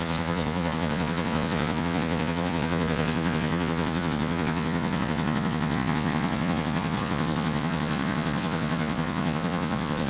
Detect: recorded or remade remade